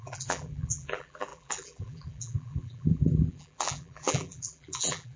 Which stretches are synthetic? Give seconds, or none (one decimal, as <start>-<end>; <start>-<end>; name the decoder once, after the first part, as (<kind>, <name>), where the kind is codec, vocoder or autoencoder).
0.0-5.2 (vocoder, BigVGAN v2)